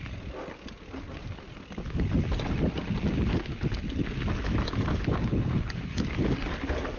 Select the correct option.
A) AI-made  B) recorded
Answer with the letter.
B